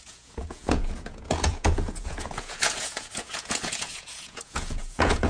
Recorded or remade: remade